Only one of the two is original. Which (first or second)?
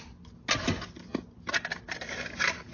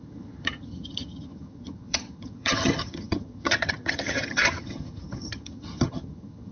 first